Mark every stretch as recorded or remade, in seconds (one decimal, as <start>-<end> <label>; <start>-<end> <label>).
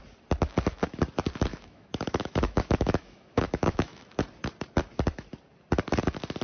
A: 0.0-1.5 recorded; 1.5-4.2 remade; 4.2-6.4 recorded